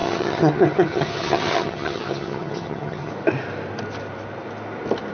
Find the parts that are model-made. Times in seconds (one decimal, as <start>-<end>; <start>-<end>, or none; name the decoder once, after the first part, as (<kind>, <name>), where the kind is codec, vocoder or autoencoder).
0.0-3.1 (vocoder, HiFi-GAN)